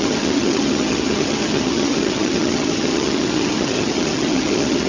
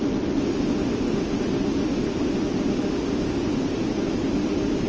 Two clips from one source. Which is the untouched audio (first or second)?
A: second